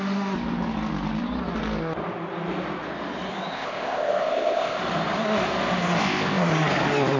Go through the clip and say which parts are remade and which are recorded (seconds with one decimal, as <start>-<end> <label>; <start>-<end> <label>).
0.0-3.5 recorded; 3.5-4.8 remade; 4.8-6.0 recorded; 6.0-6.5 remade; 6.5-7.2 recorded